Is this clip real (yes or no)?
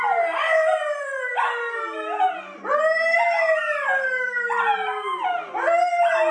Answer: yes